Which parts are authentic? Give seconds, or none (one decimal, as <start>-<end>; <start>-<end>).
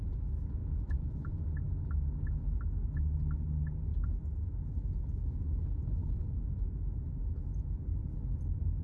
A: 0.0-0.6; 1.5-7.9